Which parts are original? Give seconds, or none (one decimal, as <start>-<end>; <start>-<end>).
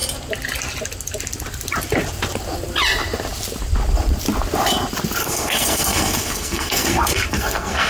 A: 0.0-5.2